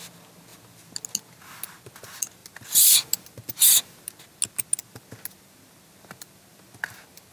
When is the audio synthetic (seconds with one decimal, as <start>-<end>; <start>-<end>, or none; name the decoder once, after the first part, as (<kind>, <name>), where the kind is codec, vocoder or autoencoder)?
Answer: none